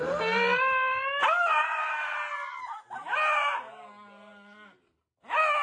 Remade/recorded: recorded